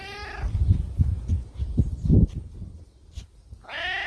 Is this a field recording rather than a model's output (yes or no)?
yes